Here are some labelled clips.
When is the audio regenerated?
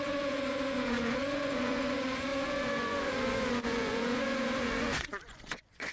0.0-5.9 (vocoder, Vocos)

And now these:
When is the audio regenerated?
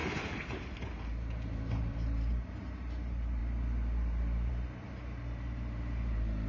0.0-3.4 (vocoder, BigVGAN v2); 4.5-6.5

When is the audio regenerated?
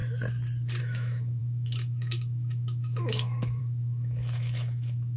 0.8-5.2 (autoencoder, DAC-VAE)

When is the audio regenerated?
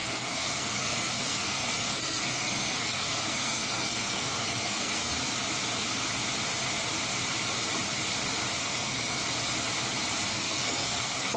0.0-5.1 (codec, SNAC); 8.6-9.2; 10.3-11.4